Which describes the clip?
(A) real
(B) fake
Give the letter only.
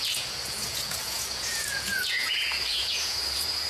B